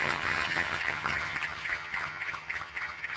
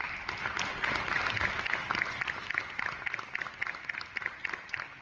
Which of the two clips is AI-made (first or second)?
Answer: first